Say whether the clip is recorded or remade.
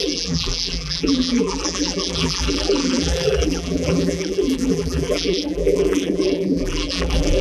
remade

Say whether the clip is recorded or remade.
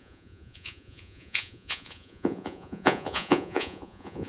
remade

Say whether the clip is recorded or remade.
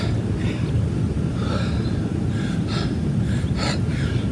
recorded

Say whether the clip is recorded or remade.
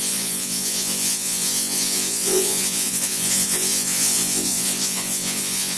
remade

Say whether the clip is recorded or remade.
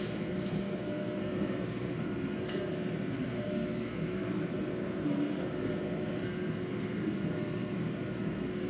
remade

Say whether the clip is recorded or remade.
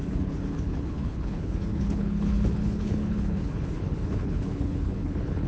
remade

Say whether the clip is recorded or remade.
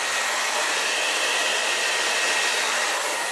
recorded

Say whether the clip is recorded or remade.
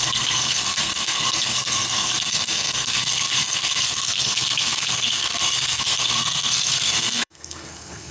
remade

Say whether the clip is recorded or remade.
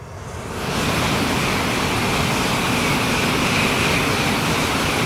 recorded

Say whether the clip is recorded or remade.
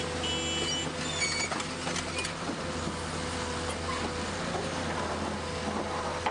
recorded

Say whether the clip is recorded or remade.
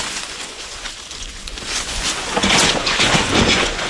remade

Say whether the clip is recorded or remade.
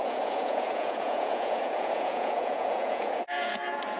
remade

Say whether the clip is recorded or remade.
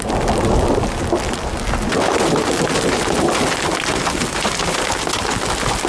remade